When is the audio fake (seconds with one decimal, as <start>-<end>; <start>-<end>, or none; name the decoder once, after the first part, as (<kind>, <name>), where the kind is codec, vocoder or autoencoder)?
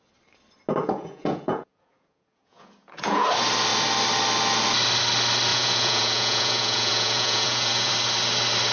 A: 0.8-3.3 (vocoder, Vocos); 5.5-7.9